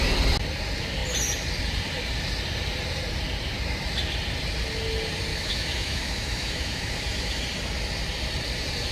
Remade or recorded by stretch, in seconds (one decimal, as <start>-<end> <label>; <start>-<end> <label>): 0.0-5.3 recorded; 5.3-7.4 remade; 7.4-8.9 recorded